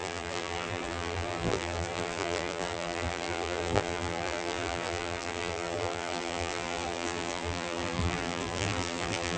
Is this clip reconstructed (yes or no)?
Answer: yes